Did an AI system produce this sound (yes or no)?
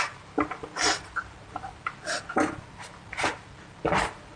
no